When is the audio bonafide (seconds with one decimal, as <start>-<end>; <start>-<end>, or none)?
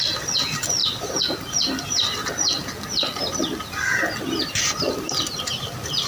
0.0-6.1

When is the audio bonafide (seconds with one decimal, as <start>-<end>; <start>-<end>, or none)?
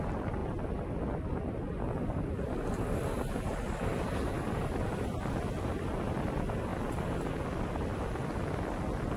0.0-9.2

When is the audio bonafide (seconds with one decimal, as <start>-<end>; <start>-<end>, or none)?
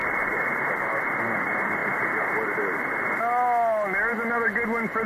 0.8-5.1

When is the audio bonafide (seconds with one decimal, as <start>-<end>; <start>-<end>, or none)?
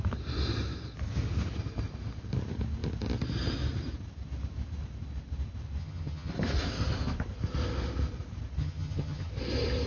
0.0-5.8; 6.3-8.6; 9.3-9.9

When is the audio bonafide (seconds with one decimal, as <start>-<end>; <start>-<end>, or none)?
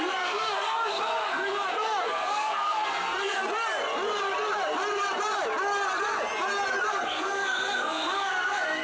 3.4-6.9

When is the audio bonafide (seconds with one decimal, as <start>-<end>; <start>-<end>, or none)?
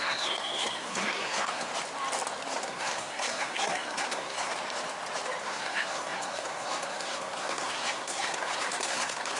1.7-2.6; 4.5-5.4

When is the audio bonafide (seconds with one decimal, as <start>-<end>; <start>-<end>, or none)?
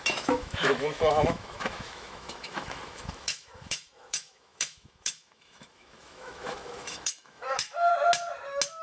7.9-8.8